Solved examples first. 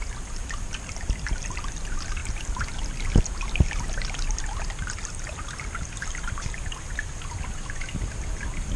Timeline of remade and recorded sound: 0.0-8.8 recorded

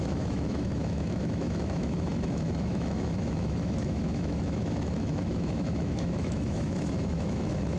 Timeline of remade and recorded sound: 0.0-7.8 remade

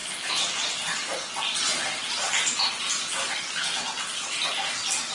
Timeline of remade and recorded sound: 0.0-5.1 recorded